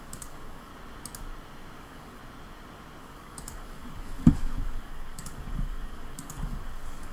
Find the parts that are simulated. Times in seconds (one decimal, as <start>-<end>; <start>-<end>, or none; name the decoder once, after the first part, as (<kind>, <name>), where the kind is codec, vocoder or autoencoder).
0.0-0.7 (codec, DAC); 1.8-2.2; 3.0-7.1

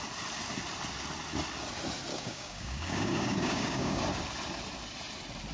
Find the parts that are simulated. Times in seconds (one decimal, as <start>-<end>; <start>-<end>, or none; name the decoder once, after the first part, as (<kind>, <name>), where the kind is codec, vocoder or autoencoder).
2.1-4.0 (codec, DAC)